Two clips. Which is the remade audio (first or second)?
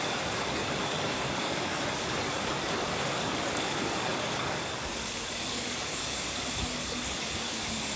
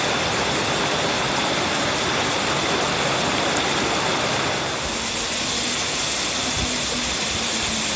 first